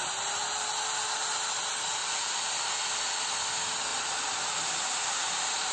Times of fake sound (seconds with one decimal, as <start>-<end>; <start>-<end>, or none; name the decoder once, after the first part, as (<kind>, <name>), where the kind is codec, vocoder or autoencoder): 2.0-2.6 (vocoder, BigVGAN v2); 3.9-5.7